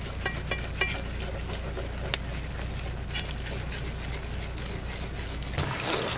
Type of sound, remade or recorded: recorded